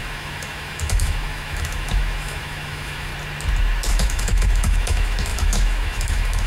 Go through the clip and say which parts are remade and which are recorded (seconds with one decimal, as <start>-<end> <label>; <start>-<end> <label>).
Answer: 0.0-3.1 remade; 3.1-3.9 recorded; 3.9-6.5 remade